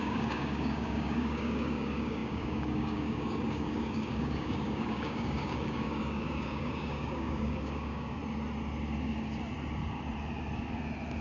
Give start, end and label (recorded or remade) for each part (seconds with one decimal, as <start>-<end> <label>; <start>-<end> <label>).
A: 0.0-8.2 remade; 8.2-11.2 recorded